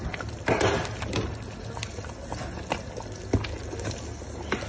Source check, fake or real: real